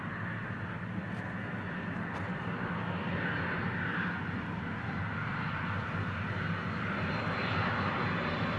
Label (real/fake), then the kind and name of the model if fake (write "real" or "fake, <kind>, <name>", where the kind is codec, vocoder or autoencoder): real